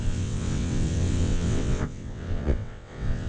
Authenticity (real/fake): fake